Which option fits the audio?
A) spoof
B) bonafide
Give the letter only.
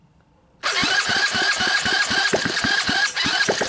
B